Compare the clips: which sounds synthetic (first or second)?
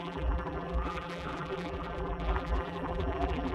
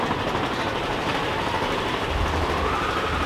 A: first